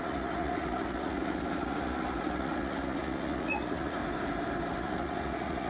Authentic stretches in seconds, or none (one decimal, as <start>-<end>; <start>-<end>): 4.0-4.7